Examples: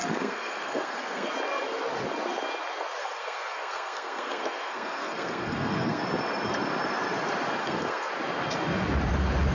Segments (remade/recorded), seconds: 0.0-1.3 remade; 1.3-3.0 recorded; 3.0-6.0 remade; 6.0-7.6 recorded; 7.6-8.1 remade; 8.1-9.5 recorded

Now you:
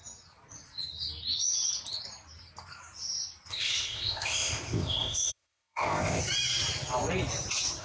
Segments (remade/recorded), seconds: 0.0-3.5 recorded; 3.5-6.2 remade; 6.2-7.8 recorded

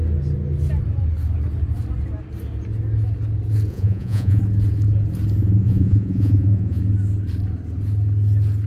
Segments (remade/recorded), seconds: 0.0-3.7 recorded; 3.7-4.4 remade; 4.4-5.4 recorded; 5.4-6.8 remade; 6.8-8.7 recorded

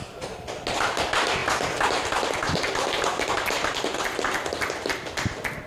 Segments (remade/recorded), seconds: 0.0-5.7 recorded